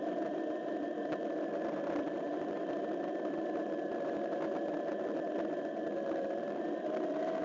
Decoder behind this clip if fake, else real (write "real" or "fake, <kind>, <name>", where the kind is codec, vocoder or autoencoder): fake, vocoder, BigVGAN v2